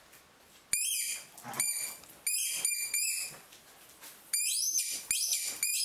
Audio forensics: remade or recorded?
recorded